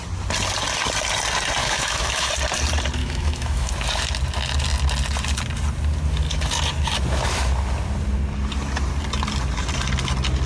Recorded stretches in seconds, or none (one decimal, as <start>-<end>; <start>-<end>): 0.0-1.6; 2.3-3.0; 3.7-10.5